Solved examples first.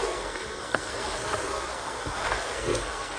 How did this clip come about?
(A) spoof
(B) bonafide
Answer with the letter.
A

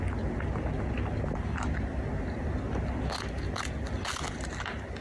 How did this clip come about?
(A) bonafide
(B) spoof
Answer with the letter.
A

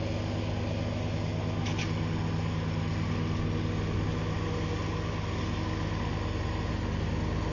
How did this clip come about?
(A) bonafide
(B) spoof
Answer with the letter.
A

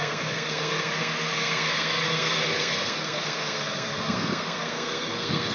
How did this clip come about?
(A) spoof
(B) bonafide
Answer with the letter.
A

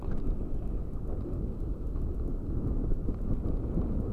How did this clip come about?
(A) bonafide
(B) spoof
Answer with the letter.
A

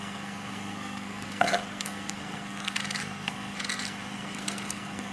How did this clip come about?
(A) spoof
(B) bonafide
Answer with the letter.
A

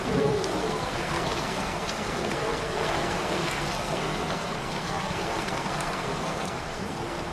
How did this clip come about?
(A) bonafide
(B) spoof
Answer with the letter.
B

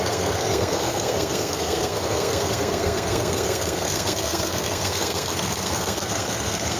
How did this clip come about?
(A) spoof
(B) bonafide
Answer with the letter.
A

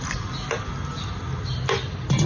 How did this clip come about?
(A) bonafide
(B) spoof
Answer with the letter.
A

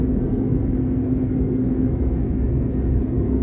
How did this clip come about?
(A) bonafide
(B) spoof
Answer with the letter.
B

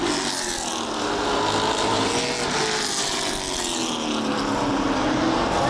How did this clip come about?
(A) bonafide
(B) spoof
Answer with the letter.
A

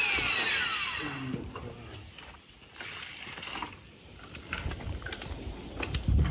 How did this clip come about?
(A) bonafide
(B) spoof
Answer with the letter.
A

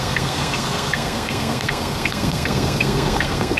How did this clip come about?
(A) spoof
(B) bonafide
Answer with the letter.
A